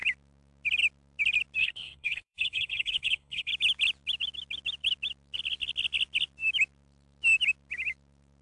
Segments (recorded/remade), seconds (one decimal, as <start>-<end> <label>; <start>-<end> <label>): 0.0-1.6 recorded; 1.6-3.5 remade; 3.5-8.4 recorded